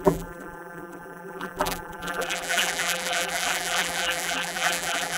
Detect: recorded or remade remade